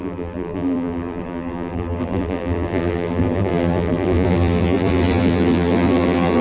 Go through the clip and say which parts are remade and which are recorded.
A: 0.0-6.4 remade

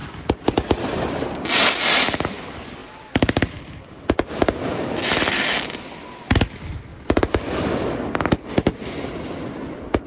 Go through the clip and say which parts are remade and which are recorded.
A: 0.0-0.8 remade; 0.8-2.8 recorded; 2.8-4.3 remade; 4.3-6.9 recorded; 6.9-8.1 remade; 8.1-10.1 recorded

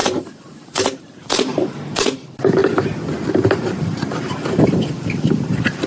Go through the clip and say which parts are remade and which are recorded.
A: 0.0-2.6 remade; 2.6-3.2 recorded; 3.2-5.9 remade

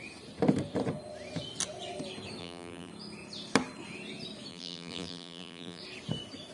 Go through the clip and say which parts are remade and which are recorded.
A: 0.0-2.4 recorded; 2.4-2.9 remade; 2.9-4.5 recorded; 4.5-5.8 remade; 5.8-6.5 recorded

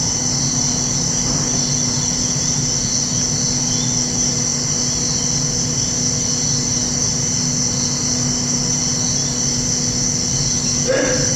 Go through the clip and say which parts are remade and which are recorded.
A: 0.0-4.5 recorded; 4.5-5.4 remade; 5.4-11.4 recorded

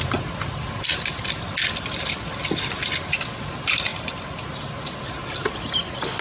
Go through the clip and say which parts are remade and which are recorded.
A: 0.0-6.2 recorded